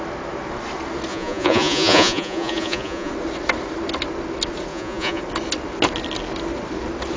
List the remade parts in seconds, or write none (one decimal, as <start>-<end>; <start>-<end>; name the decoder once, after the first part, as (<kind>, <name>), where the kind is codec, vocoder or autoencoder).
1.1-3.1 (vocoder, Vocos); 4.7-5.2